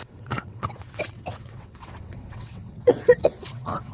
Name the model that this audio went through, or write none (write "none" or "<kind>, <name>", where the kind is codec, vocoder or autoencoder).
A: vocoder, WaveNeXt